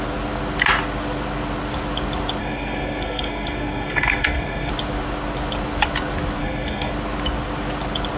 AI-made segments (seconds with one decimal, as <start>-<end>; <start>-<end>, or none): 2.4-4.7; 6.4-6.9